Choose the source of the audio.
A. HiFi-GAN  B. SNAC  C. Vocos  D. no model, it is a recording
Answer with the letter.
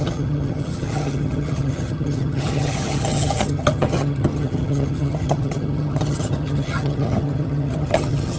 A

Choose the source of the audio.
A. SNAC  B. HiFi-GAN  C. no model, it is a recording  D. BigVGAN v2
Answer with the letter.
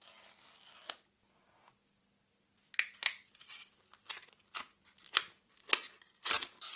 C